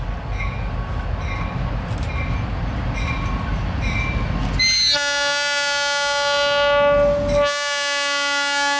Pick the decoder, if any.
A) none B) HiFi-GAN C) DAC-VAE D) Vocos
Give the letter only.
A